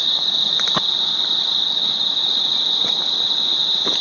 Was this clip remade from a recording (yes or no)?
no